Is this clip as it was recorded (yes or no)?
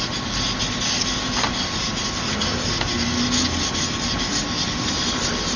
yes